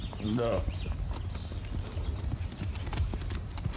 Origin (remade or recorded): recorded